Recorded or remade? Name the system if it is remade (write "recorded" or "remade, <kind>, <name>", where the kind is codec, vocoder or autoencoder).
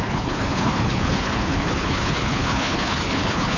remade, codec, HILCodec